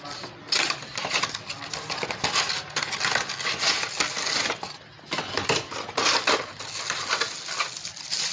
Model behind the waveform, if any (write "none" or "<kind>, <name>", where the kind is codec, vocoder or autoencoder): none